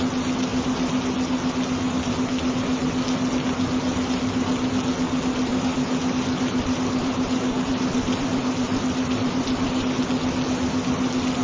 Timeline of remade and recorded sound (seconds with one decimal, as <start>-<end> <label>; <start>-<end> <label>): 0.0-5.5 recorded; 5.5-10.0 remade; 10.0-11.4 recorded